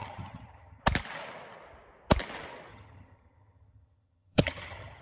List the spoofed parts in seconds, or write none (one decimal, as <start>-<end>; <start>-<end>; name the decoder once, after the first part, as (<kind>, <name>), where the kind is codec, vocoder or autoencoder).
0.0-0.8 (vocoder, HiFi-GAN); 2.7-5.0